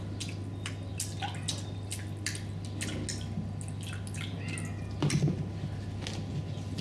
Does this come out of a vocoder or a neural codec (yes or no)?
no